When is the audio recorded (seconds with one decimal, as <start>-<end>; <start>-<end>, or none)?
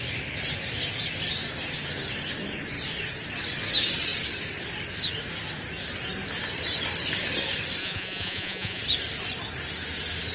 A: 0.0-7.8; 8.8-10.3